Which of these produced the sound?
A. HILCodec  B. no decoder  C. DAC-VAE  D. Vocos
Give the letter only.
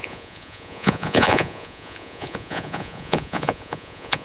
D